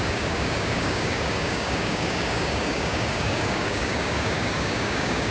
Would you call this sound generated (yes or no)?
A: yes